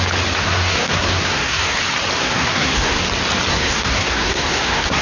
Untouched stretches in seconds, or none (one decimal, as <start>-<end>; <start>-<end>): 0.0-0.4; 1.8-2.2; 3.0-3.5